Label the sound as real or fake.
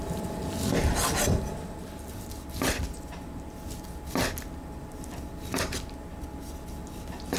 real